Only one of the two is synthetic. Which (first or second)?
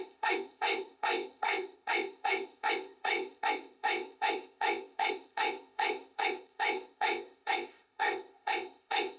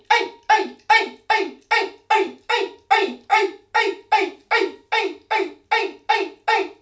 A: first